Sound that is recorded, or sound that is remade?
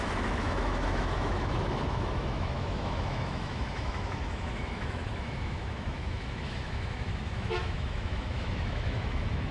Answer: remade